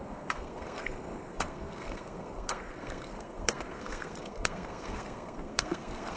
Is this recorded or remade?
remade